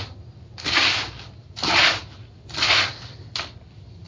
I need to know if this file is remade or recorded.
recorded